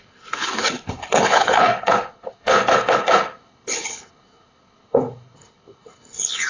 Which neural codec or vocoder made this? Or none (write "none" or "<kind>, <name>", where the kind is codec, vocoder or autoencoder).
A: codec, HILCodec